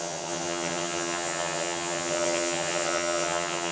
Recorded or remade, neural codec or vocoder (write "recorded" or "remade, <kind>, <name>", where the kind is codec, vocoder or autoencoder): remade, vocoder, HiFi-GAN